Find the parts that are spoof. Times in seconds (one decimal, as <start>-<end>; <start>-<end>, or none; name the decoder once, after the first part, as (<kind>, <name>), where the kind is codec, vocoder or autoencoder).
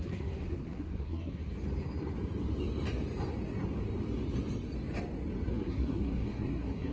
0.0-1.4 (codec, SNAC); 5.5-6.9